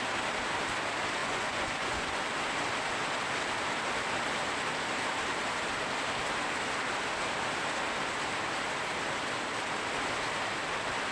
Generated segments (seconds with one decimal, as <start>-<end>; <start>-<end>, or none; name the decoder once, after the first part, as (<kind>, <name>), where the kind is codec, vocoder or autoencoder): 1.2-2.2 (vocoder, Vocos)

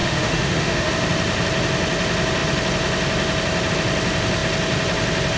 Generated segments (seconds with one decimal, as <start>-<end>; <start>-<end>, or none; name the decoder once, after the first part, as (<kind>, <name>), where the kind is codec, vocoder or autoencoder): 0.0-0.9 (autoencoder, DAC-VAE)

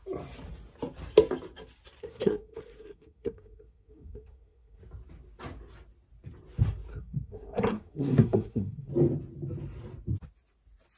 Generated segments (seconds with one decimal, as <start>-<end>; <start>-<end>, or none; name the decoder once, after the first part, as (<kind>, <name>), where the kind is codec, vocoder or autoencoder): 2.0-4.8 (codec, SNAC); 6.9-8.9